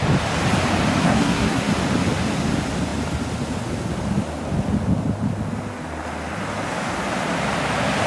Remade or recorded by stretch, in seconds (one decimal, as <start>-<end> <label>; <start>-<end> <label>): 0.0-1.0 recorded; 1.0-1.7 remade; 1.7-8.1 recorded